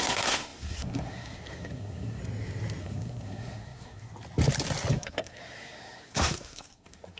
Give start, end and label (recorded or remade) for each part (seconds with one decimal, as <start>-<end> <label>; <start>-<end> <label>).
0.0-2.2 remade; 2.2-2.8 recorded; 2.8-4.1 remade; 4.1-4.9 recorded; 4.9-7.2 remade